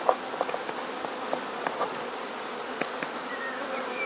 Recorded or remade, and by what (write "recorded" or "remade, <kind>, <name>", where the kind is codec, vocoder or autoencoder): remade, vocoder, BigVGAN v2